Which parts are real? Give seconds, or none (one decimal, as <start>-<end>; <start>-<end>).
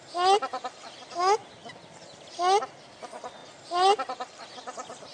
0.0-0.5; 1.2-3.4